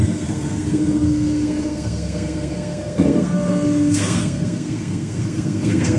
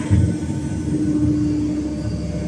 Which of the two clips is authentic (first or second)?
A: second